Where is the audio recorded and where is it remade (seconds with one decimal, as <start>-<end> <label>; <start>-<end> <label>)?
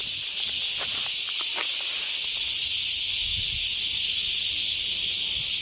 0.0-5.6 recorded